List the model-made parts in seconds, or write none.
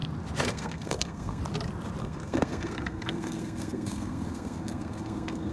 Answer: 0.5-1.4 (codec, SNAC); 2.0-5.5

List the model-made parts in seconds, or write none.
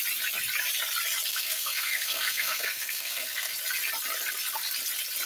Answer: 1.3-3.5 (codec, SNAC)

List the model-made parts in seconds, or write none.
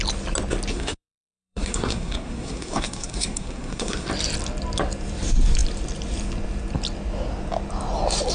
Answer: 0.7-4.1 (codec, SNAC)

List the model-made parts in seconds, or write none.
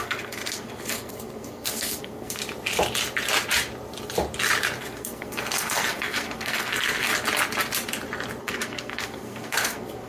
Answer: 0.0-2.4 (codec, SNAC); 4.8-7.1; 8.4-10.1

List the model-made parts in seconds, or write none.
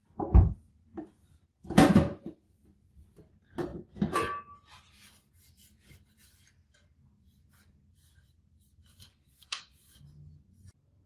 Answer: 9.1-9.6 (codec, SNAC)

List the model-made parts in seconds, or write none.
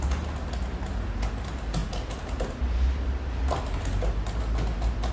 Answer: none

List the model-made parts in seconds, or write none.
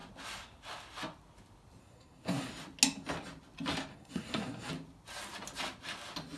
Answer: 1.8-2.5 (codec, SNAC); 3.9-4.7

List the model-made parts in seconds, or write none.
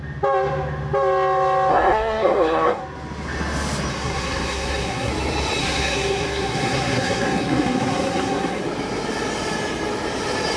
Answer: 1.7-2.8 (codec, SNAC); 3.9-5.1; 5.6-8.6